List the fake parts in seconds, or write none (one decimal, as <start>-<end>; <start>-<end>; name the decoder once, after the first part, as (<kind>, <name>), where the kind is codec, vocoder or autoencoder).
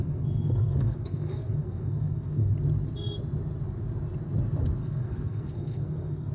0.0-2.5 (codec, SNAC); 4.8-6.3